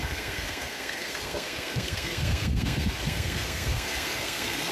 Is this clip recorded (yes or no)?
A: no